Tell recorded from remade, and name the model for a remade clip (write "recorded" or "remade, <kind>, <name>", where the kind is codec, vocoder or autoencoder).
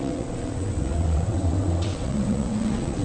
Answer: remade, vocoder, WaveNeXt